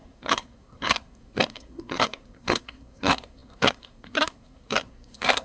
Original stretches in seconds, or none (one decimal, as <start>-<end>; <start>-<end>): none